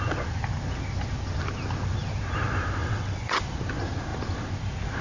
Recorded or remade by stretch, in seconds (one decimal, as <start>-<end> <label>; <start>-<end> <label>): 0.0-2.8 recorded; 2.8-3.4 remade; 3.4-5.0 recorded